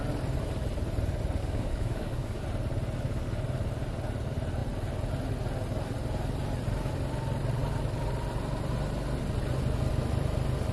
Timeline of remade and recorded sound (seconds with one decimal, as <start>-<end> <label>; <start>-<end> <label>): 0.0-1.4 recorded; 1.4-2.4 remade; 2.4-10.7 recorded